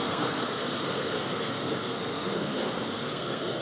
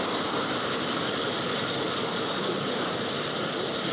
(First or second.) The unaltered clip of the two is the second